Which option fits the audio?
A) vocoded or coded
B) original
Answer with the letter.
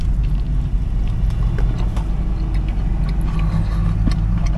B